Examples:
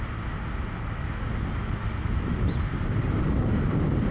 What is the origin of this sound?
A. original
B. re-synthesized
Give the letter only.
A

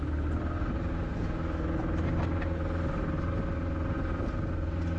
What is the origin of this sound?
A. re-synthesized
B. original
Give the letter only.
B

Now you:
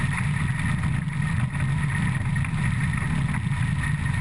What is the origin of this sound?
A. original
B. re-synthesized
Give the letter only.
A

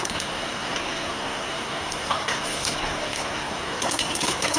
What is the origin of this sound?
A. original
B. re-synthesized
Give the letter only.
B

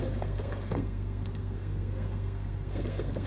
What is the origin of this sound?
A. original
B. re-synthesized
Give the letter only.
B